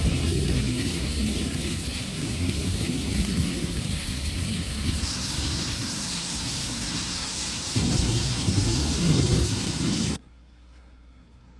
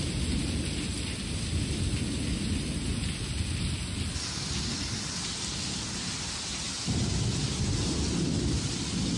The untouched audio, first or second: second